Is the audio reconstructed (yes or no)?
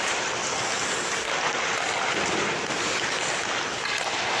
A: yes